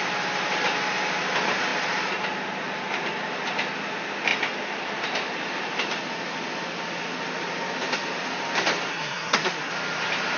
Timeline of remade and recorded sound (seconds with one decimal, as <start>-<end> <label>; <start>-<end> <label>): 0.0-8.9 recorded; 8.9-9.7 remade; 9.7-10.4 recorded